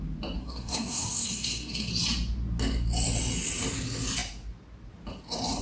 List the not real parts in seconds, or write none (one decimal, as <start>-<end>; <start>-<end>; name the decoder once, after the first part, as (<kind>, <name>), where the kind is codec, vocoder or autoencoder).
0.4-1.9 (codec, SNAC)